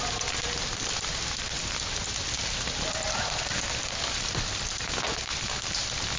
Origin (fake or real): real